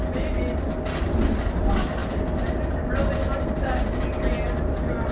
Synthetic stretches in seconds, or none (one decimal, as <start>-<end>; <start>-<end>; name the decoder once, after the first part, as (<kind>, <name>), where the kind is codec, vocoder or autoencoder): none